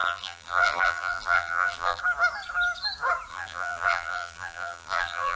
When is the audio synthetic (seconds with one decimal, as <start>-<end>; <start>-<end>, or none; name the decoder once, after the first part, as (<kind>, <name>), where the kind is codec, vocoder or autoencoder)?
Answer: 0.0-2.0 (vocoder, BigVGAN v2); 3.3-5.4